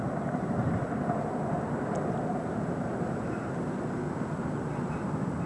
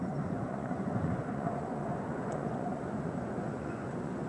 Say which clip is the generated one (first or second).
second